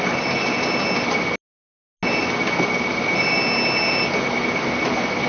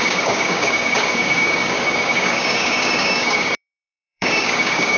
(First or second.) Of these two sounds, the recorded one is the first